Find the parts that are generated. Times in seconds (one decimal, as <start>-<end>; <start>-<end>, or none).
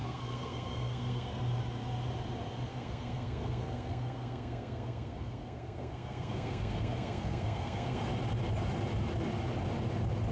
0.0-1.4; 2.7-8.0